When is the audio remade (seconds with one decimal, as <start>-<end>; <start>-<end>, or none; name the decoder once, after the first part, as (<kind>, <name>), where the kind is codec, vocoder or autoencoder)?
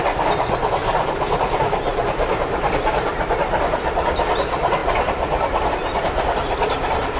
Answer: none